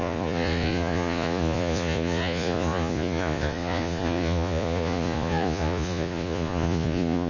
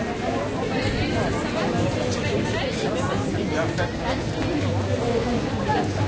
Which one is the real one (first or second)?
second